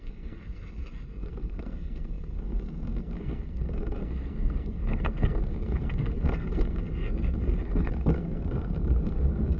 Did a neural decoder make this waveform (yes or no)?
yes